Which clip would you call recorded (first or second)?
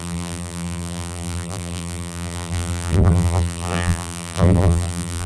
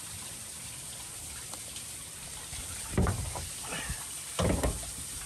second